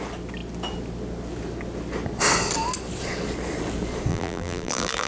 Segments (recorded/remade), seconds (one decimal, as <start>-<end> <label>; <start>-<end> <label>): 0.0-4.1 recorded; 4.1-5.1 remade